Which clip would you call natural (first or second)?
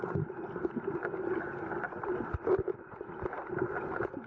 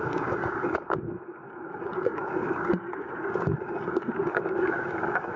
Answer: first